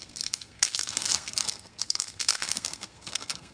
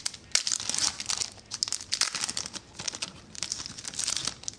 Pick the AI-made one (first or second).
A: first